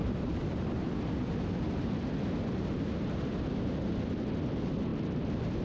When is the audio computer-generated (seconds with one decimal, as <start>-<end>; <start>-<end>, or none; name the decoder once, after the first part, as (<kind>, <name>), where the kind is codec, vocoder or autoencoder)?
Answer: 0.0-3.4 (vocoder, BigVGAN v2)